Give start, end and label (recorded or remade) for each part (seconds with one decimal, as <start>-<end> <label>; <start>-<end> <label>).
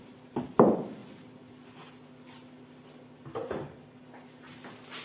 0.0-5.0 recorded